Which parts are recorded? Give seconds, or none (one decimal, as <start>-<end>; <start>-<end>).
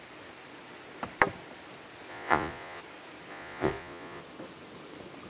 0.0-2.1; 2.8-3.3; 4.2-5.3